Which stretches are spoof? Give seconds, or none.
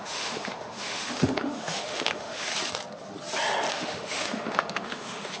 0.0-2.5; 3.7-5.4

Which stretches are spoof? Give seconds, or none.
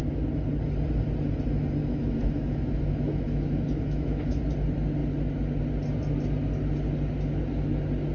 1.8-4.4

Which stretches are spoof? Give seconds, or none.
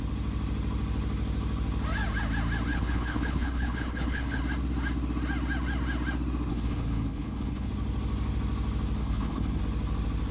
2.7-4.4; 6.5-7.7; 9.0-9.6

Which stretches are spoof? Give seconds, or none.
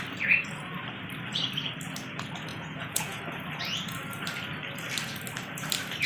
2.5-3.2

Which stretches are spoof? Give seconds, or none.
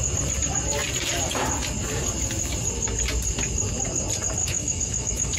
4.4-5.4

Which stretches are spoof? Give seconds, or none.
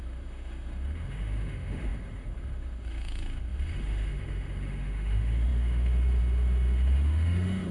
0.0-7.7